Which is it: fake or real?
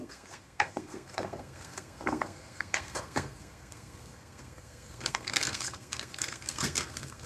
fake